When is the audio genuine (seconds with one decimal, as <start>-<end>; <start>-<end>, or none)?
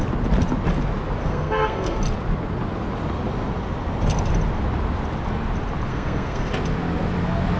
0.0-1.2; 2.0-5.9; 6.5-7.6